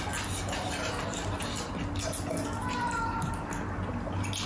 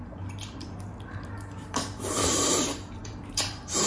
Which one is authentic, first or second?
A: first